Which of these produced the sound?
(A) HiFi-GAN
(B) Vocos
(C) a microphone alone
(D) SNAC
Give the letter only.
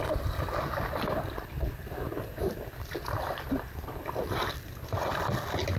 C